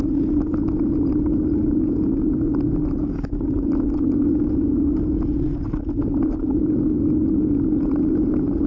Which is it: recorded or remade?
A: recorded